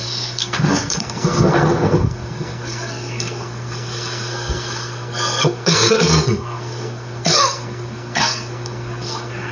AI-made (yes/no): yes